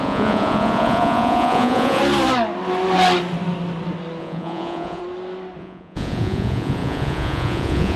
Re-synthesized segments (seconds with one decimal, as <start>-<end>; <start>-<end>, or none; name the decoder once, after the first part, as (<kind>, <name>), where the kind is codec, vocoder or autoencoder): 0.0-2.0 (vocoder, Vocos); 4.2-5.0; 5.6-8.0